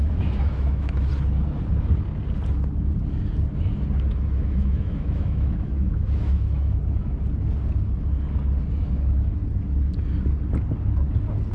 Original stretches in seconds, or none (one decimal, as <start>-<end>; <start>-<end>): 1.1-4.1; 6.8-8.7; 9.4-11.5